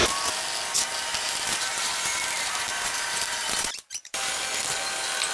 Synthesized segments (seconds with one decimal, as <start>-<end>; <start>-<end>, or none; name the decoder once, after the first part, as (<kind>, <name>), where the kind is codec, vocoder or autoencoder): 1.1-4.3 (vocoder, BigVGAN v2)